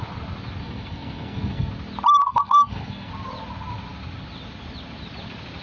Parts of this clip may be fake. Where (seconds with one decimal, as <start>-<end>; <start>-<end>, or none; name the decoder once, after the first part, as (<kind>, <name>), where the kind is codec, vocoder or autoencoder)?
0.6-1.7 (codec, SNAC); 2.2-3.1